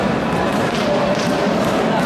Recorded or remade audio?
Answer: recorded